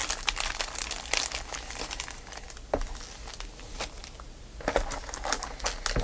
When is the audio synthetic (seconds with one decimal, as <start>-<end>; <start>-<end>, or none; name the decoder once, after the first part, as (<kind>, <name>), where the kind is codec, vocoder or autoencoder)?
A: none